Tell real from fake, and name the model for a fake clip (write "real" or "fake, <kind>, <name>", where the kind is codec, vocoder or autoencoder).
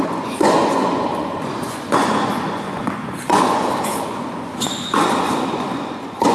fake, vocoder, Vocos